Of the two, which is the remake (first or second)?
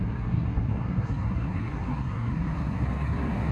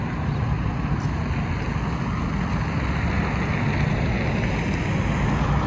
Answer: first